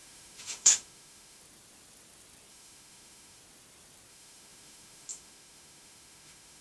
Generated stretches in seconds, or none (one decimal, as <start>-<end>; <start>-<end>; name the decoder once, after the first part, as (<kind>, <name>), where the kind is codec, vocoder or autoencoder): 0.0-1.4 (autoencoder, DAC-VAE); 2.5-3.4; 4.1-6.6